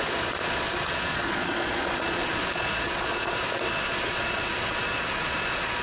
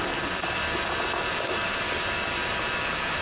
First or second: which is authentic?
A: second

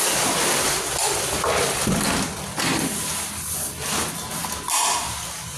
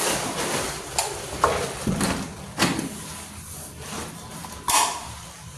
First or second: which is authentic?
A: first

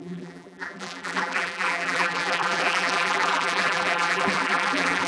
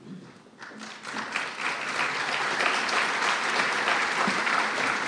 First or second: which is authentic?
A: second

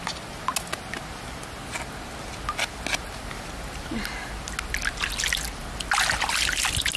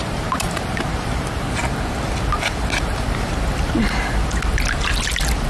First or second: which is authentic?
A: first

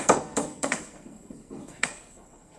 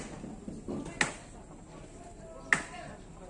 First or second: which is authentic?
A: second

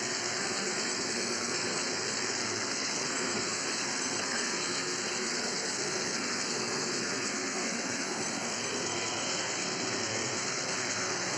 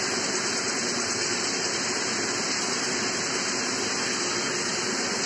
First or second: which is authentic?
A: second